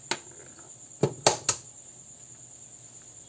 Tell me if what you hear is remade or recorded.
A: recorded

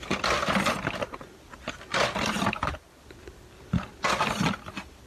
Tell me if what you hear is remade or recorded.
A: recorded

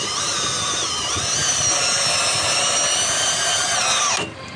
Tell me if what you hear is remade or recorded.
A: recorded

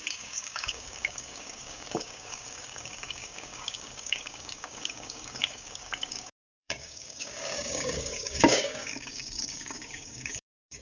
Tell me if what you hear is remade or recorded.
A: remade